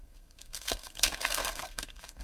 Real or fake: fake